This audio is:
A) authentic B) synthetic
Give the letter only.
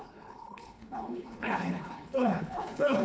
B